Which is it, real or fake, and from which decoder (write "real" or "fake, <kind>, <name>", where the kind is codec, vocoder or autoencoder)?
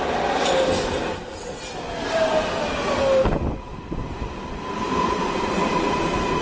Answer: real